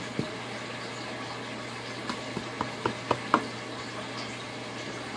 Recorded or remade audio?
recorded